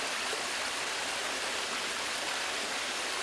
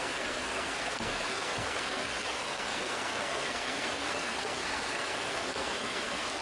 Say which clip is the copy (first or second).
second